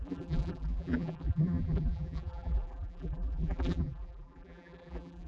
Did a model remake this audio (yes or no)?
yes